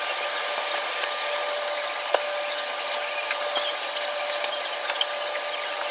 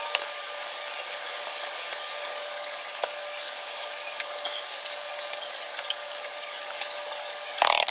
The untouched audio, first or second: first